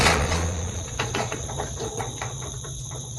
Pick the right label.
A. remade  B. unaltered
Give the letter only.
A